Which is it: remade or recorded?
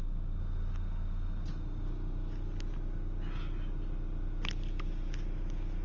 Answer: recorded